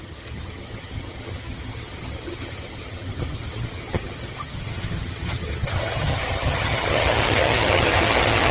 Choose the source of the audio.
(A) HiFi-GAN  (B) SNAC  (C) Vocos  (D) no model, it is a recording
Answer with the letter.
A